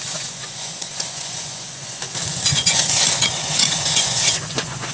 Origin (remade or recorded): remade